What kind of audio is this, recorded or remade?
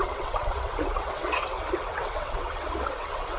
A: remade